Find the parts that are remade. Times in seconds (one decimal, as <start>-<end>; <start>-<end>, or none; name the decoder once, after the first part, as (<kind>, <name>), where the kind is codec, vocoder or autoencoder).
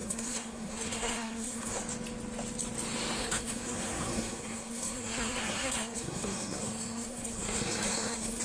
0.0-1.8 (codec, SNAC); 3.2-8.4